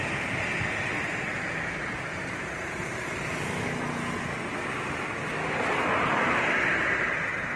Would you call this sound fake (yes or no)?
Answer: no